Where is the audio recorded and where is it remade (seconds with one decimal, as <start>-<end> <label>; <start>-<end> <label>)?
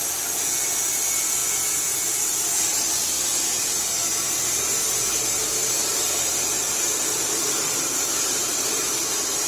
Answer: 0.0-5.9 recorded; 5.9-9.5 remade